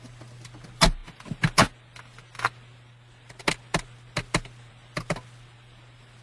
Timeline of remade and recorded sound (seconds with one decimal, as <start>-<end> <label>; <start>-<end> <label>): 0.0-6.2 recorded